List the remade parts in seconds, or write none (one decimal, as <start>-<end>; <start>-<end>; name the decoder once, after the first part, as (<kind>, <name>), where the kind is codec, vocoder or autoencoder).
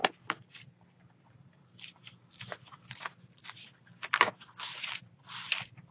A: none